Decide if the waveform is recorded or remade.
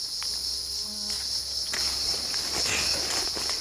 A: recorded